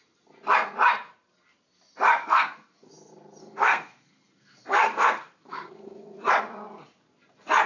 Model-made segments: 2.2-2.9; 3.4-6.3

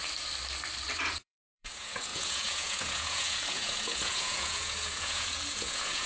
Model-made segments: 1.1-6.1

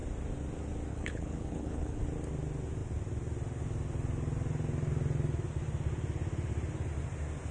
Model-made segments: 0.9-2.0

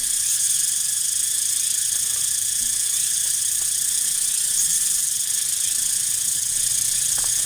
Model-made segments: 0.0-3.4

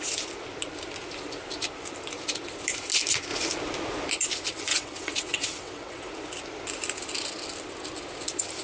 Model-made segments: 4.7-6.0

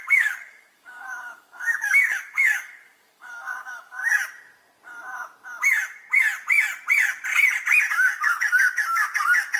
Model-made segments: 0.0-4.0; 7.9-9.6

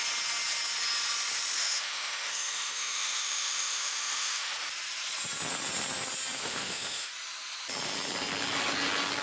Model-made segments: 1.6-4.5; 6.4-7.1

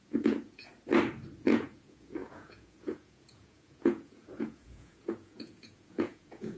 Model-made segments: 0.0-0.7; 1.4-6.6